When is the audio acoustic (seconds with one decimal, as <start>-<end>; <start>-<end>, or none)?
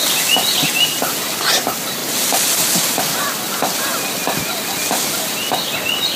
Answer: 0.0-6.2